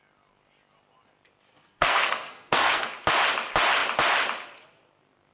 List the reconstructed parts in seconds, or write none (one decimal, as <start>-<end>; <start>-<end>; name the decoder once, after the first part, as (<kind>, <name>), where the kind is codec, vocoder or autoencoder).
1.5-2.9 (codec, SNAC)